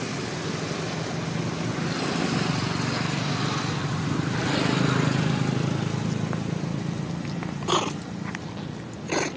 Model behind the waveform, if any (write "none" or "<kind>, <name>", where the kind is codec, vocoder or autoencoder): none